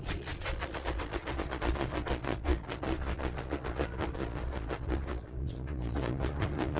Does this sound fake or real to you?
fake